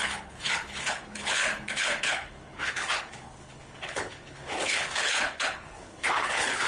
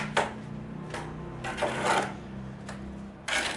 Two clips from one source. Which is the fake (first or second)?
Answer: first